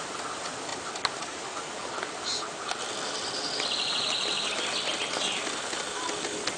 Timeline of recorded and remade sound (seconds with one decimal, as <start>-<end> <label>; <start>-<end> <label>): 0.0-6.6 recorded